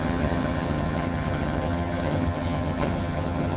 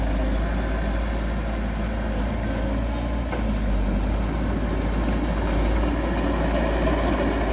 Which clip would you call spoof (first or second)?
first